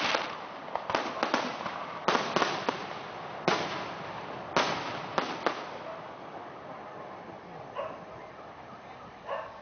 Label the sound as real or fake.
real